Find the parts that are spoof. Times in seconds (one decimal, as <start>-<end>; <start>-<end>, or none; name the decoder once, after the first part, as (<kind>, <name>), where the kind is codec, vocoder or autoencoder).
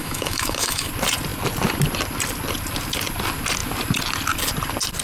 0.0-0.9 (autoencoder, DAC-VAE)